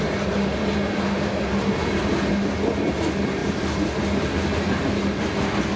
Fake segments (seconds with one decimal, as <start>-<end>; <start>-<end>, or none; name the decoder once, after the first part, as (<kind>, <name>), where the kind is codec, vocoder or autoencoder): none